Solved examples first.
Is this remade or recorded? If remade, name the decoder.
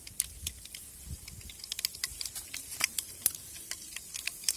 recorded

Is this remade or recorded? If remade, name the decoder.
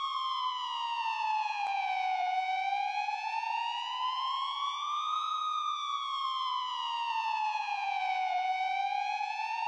remade, vocoder, Vocos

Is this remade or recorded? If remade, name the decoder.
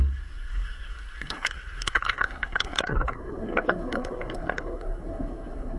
remade, codec, SNAC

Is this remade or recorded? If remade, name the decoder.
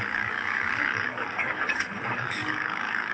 remade, codec, DAC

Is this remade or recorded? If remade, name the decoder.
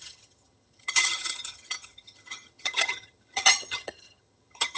remade, vocoder, HiFi-GAN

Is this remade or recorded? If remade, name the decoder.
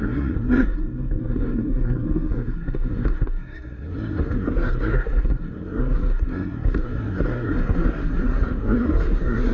remade, codec, SNAC